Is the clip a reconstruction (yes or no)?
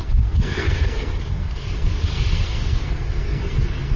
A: yes